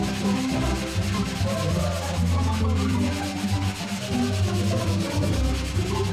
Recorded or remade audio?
recorded